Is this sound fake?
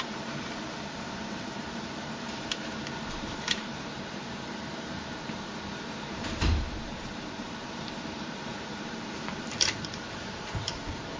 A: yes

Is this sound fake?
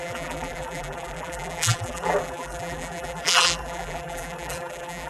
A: yes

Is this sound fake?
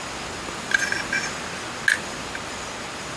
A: no